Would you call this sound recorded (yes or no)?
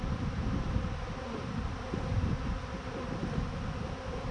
no